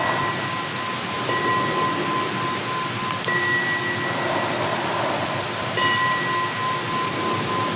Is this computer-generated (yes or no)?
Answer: no